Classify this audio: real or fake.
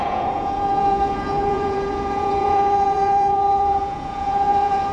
fake